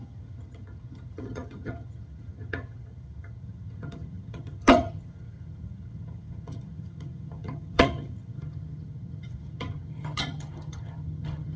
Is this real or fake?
fake